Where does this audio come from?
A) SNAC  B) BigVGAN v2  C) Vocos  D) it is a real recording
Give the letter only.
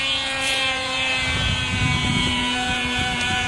C